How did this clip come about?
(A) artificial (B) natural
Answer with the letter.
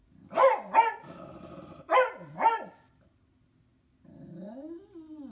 B